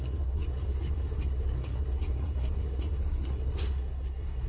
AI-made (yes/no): yes